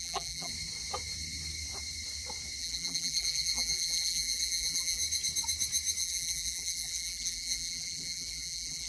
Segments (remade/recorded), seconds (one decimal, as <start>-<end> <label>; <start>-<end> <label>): 0.0-0.5 remade; 0.5-2.6 recorded; 2.6-5.0 remade; 5.0-6.0 recorded; 6.0-8.9 remade